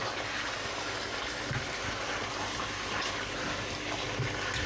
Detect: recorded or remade recorded